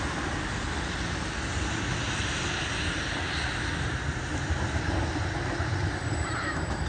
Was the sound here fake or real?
real